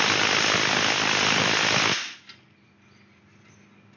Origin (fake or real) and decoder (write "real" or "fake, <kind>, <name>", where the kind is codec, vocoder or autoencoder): real